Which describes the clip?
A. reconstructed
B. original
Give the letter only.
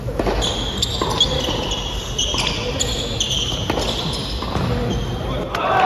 B